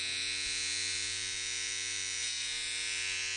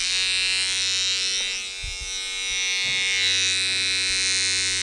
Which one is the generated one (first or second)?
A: first